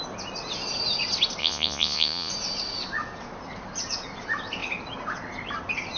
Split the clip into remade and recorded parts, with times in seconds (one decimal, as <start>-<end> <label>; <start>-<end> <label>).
0.0-1.4 recorded; 1.4-2.3 remade; 2.3-6.0 recorded